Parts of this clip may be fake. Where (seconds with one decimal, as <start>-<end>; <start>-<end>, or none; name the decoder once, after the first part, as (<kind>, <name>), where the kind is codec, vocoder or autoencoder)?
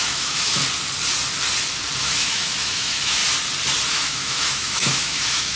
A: 0.0-0.6 (autoencoder, DAC-VAE); 2.0-3.2; 3.9-5.6